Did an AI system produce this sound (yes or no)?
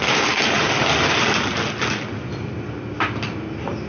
no